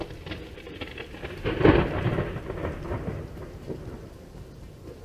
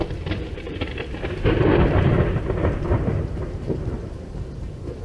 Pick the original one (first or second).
first